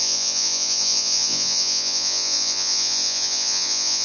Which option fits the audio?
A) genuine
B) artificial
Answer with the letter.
B